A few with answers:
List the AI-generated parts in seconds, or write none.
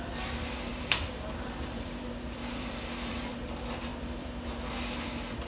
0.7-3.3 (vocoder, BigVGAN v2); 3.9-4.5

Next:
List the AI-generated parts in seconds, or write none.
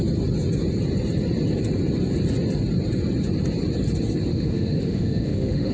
4.3-5.7 (autoencoder, DAC-VAE)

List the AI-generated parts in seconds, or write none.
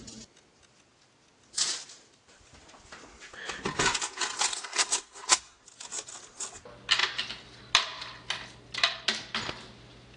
4.5-5.6 (codec, SNAC)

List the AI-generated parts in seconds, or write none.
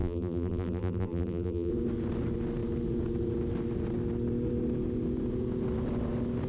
0.0-1.7 (vocoder, BigVGAN v2)